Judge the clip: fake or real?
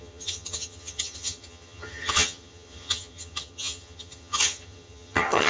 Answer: fake